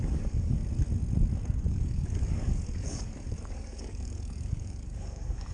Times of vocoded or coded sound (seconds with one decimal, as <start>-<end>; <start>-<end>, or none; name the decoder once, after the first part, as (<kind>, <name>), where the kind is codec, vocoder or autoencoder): 0.0-0.6 (codec, DAC); 1.7-5.5

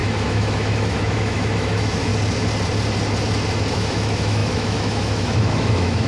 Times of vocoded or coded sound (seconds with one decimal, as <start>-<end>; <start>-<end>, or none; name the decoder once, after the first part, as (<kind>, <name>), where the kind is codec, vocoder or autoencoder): 0.0-2.1 (autoencoder, DAC-VAE); 3.7-6.1

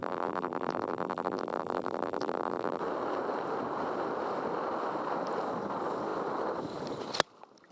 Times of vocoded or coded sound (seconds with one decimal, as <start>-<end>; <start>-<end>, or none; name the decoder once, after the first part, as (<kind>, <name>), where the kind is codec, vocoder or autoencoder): 0.0-2.8 (vocoder, BigVGAN v2)

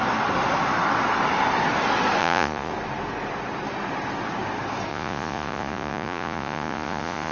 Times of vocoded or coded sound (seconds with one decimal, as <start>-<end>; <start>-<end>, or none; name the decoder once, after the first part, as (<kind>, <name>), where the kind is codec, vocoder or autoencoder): 2.2-2.7 (vocoder, Vocos); 4.9-7.3

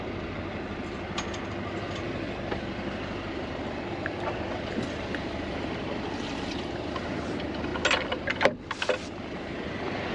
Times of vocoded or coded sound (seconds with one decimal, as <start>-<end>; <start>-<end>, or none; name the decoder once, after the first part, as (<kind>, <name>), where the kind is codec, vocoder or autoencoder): 0.0-7.7 (vocoder, BigVGAN v2); 8.7-10.1

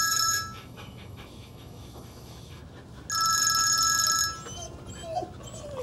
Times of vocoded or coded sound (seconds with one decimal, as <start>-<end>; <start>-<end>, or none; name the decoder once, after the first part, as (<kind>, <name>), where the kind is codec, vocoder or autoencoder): 0.0-2.6 (autoencoder, DAC-VAE)

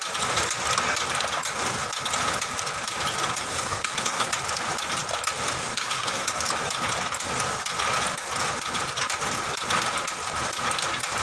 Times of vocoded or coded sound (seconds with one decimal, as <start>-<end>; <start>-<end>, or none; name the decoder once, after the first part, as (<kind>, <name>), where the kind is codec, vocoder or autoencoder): 3.4-4.3 (codec, SNAC); 5.6-6.4